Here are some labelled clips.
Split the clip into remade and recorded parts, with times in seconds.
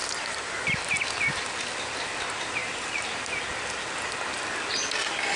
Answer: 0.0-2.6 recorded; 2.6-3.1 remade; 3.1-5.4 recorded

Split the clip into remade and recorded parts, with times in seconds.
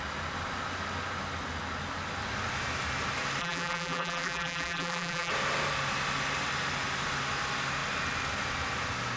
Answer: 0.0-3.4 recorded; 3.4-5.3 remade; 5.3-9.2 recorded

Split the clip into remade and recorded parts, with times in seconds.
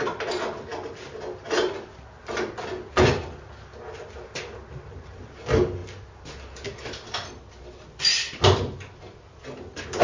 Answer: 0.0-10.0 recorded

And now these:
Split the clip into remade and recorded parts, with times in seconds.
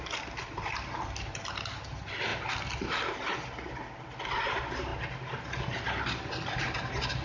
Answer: 0.0-7.2 recorded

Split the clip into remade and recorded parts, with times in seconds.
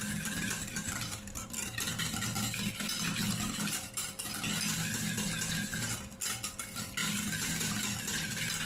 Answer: 0.0-7.0 recorded; 7.0-7.6 remade; 7.6-8.7 recorded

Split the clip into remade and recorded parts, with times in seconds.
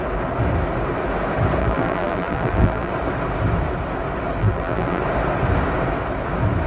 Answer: 0.0-1.6 recorded; 1.6-2.9 remade; 2.9-4.4 recorded; 4.4-5.0 remade; 5.0-6.7 recorded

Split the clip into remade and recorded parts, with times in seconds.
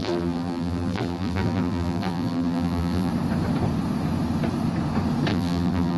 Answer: 0.0-3.1 remade; 3.1-5.3 recorded; 5.3-6.0 remade